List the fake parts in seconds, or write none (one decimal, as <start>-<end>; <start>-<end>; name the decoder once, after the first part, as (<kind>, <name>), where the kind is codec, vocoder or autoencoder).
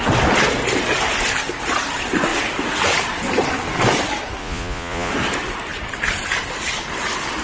4.4-5.1 (vocoder, Vocos)